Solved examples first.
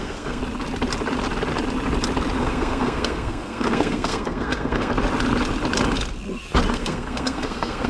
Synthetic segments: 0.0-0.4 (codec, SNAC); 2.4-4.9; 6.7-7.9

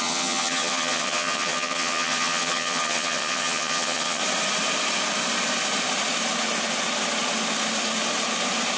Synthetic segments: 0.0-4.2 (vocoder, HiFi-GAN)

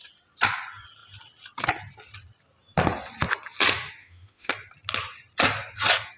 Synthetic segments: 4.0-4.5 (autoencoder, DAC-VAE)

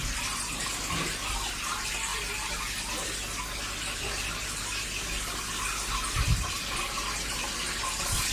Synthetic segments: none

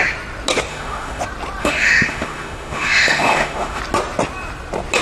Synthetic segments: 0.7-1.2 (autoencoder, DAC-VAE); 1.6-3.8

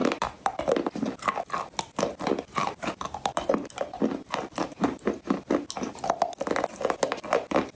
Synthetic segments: 0.0-0.6 (vocoder, BigVGAN v2); 2.6-5.4